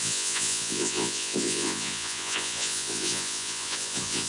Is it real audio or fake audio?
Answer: fake